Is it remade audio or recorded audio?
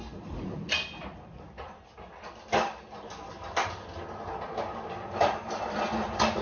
recorded